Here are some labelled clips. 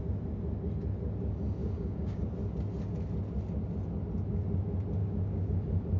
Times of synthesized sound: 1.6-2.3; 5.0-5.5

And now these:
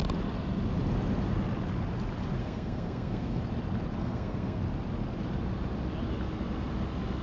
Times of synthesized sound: 2.4-3.4; 4.0-4.6